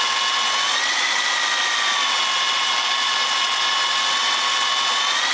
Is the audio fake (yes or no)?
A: no